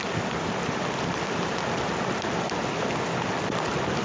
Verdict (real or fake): real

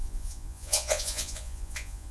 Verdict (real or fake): fake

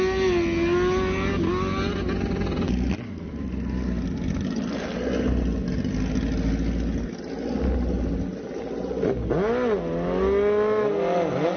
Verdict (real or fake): real